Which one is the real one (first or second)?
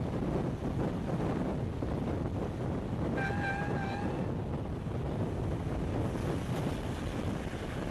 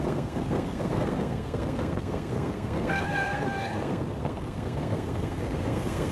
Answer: first